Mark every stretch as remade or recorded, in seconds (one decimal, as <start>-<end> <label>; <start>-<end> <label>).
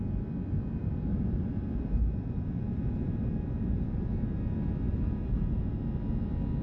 0.0-0.8 recorded; 0.8-4.1 remade; 4.1-4.9 recorded; 4.9-5.6 remade; 5.6-6.6 recorded